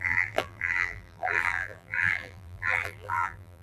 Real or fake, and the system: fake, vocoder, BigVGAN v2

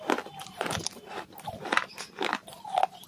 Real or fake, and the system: fake, vocoder, BigVGAN v2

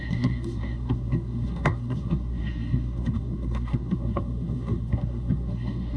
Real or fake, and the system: fake, codec, SNAC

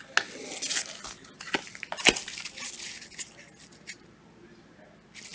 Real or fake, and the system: real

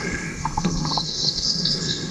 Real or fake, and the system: fake, codec, SNAC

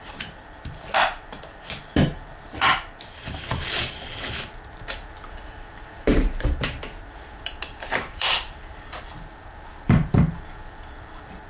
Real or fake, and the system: fake, vocoder, BigVGAN v2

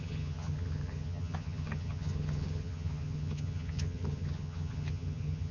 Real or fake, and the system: fake, vocoder, HiFi-GAN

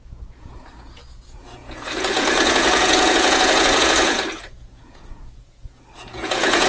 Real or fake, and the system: fake, vocoder, Vocos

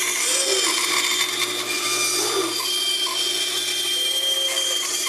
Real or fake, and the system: real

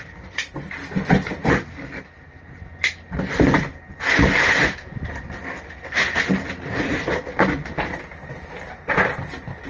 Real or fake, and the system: real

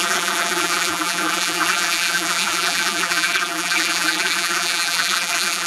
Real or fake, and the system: fake, vocoder, BigVGAN v2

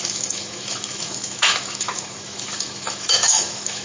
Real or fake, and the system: fake, autoencoder, DAC-VAE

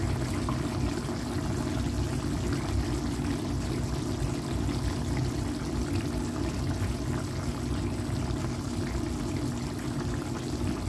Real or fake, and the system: real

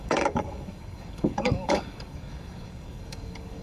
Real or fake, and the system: fake, codec, DAC